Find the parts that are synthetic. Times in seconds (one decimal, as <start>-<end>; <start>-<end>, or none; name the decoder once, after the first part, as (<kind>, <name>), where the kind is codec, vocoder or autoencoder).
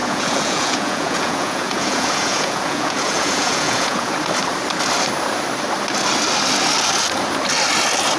0.0-4.1 (vocoder, Vocos)